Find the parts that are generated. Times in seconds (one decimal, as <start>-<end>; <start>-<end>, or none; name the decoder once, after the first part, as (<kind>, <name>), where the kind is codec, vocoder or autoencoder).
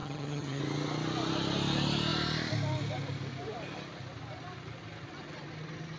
0.0-0.6 (vocoder, HiFi-GAN)